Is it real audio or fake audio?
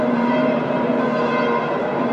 fake